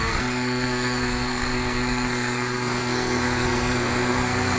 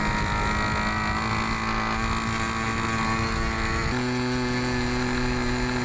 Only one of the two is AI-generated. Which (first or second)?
first